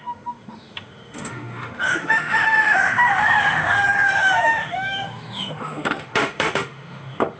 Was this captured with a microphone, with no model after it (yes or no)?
no